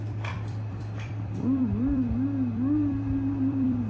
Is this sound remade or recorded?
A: remade